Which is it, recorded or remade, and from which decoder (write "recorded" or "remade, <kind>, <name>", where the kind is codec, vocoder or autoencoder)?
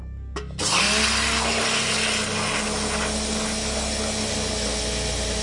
recorded